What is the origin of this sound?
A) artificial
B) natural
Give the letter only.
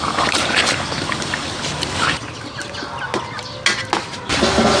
B